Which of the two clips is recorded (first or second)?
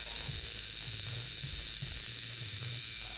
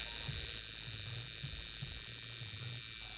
second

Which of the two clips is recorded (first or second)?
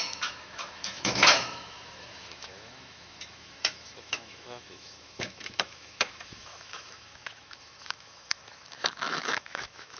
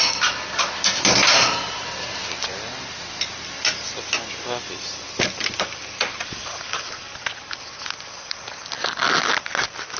second